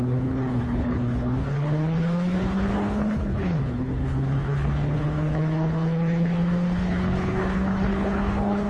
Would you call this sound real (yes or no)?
no